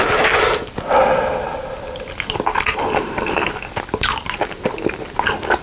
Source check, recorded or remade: recorded